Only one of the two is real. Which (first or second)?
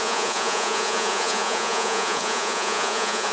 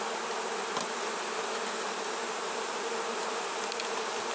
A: second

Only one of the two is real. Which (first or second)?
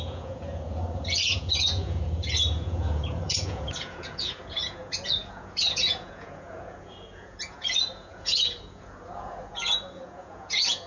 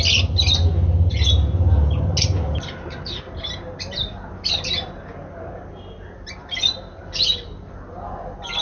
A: second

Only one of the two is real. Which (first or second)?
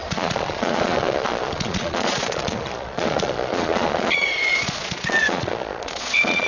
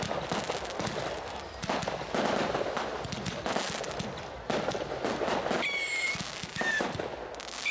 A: second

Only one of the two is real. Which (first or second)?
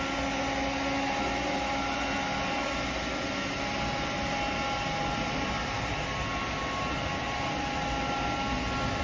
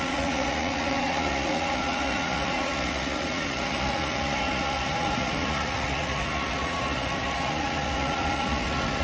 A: first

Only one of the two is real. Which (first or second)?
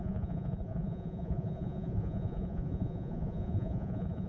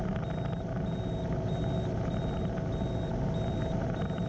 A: second